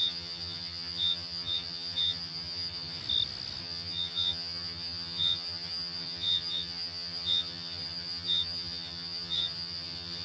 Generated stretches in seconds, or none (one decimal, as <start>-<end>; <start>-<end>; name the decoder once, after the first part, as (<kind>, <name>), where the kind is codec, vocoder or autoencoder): 0.0-3.0 (vocoder, HiFi-GAN); 3.6-10.2